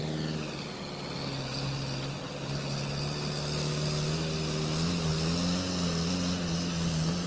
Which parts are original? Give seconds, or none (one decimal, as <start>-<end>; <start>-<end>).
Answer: 0.0-7.3